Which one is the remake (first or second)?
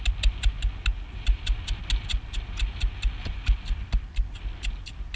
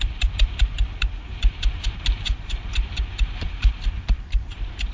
second